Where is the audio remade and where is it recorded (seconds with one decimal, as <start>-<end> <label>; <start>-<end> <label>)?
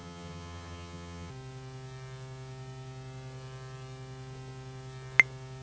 0.0-1.3 remade; 1.3-5.6 recorded